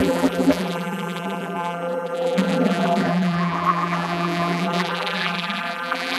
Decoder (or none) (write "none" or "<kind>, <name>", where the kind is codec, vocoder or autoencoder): vocoder, BigVGAN v2